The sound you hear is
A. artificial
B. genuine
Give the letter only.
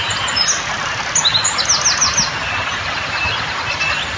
B